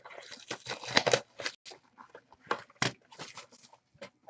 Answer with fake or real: real